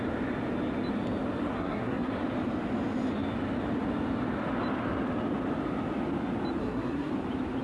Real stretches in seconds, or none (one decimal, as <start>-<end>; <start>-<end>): 0.0-1.5; 2.1-6.6; 7.1-7.6